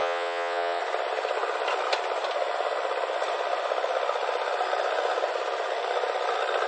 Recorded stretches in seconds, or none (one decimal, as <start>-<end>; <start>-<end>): 0.8-6.7